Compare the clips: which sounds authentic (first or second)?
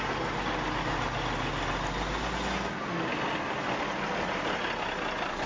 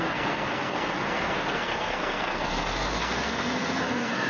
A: first